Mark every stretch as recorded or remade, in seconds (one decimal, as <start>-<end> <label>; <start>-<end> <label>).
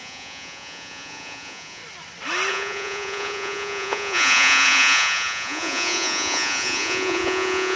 0.0-1.8 remade; 1.8-2.5 recorded; 2.5-7.8 remade